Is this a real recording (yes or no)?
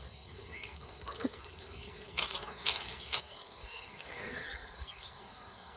no